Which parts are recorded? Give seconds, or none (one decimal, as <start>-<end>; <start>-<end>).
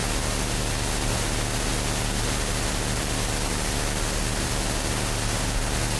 0.0-6.0